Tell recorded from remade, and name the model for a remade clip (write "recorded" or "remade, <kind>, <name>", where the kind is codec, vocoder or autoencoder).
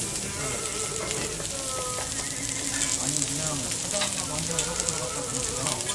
recorded